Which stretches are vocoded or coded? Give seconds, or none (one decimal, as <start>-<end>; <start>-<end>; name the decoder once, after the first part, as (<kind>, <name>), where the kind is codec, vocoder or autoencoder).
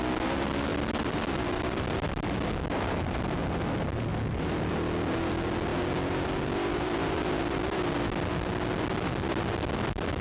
0.7-2.5 (vocoder, BigVGAN v2); 4.1-4.7